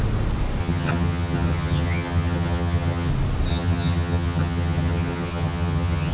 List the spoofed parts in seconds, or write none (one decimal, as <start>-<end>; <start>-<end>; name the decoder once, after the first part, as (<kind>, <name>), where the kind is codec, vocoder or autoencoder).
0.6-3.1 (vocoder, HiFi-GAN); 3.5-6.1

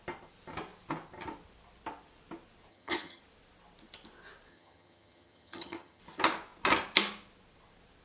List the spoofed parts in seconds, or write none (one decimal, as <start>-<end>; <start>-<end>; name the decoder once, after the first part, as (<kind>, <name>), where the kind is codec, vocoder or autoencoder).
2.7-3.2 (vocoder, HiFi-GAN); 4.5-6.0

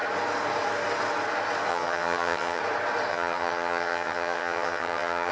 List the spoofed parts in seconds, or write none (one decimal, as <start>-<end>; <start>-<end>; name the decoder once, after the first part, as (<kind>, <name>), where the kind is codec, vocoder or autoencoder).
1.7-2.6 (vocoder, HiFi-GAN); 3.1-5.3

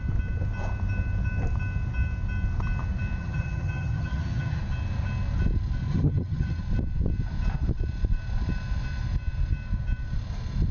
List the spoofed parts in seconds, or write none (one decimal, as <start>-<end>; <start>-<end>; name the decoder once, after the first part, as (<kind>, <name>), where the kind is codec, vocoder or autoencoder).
3.2-4.6 (vocoder, HiFi-GAN); 5.9-6.6